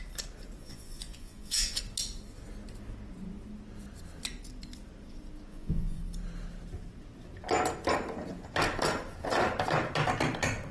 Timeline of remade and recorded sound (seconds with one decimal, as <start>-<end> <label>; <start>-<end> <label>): 0.0-0.6 recorded; 0.6-1.8 remade; 1.8-5.5 recorded; 5.5-6.0 remade; 6.0-10.7 recorded